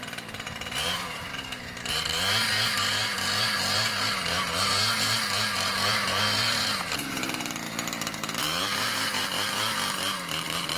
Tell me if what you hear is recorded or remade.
remade